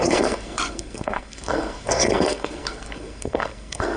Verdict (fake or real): fake